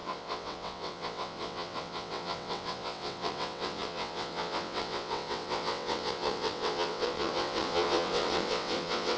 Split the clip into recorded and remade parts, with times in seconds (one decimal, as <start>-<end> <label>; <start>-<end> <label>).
0.0-9.2 remade